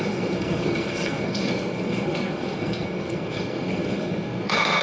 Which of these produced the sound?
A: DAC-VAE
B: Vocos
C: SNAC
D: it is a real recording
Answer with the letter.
C